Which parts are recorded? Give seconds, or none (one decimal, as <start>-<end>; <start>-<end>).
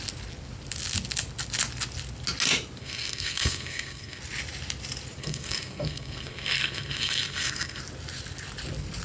0.0-2.8; 4.2-5.2; 7.8-9.0